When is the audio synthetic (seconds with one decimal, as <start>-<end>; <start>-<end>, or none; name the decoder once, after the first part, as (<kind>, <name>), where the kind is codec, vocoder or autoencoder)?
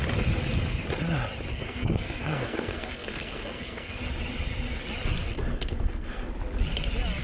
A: 1.5-4.0 (codec, SNAC); 5.5-6.3